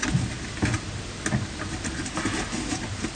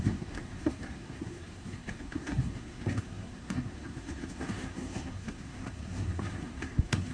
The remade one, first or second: second